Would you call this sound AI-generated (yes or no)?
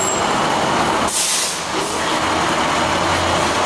no